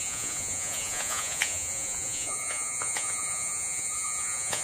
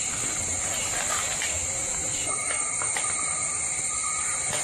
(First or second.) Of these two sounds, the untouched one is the second